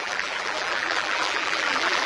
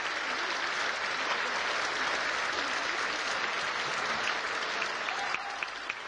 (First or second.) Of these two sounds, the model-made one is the first